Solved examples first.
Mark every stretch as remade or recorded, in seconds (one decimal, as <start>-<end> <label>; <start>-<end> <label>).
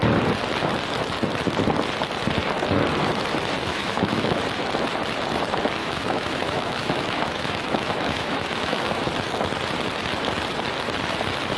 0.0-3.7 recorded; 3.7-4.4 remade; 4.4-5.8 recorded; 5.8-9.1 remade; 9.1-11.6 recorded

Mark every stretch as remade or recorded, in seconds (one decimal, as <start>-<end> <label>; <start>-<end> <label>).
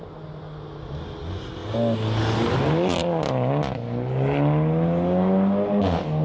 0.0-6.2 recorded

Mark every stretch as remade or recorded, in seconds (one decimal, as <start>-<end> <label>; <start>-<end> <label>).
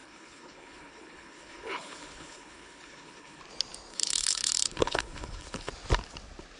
0.0-3.4 remade; 3.4-3.9 recorded; 3.9-5.7 remade; 5.7-6.6 recorded